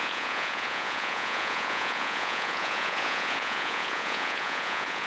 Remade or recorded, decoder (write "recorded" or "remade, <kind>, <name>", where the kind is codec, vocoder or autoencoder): remade, vocoder, Vocos